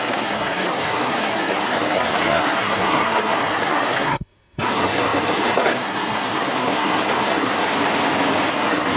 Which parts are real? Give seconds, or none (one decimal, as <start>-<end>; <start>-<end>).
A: 7.7-8.5